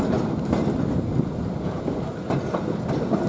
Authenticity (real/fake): real